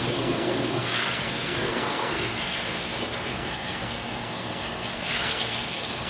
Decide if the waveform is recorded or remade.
remade